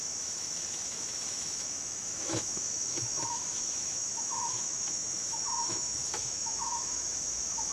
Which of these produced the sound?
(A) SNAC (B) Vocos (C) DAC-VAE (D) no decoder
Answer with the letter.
C